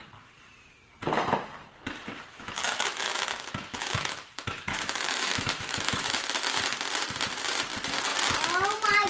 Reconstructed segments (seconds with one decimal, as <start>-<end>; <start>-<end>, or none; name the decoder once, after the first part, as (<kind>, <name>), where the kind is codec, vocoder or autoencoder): 2.3-6.6 (autoencoder, DAC-VAE)